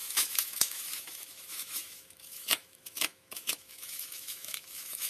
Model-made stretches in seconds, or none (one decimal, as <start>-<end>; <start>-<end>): 0.0-5.1